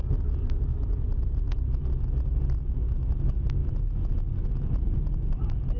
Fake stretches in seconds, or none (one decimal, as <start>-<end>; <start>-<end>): 0.7-1.6; 3.6-4.1